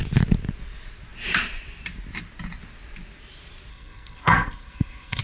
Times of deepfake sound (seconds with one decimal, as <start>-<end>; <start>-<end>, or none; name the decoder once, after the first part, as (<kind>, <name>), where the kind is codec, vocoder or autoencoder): 3.7-5.2 (codec, SNAC)